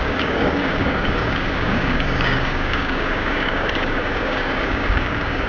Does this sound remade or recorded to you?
remade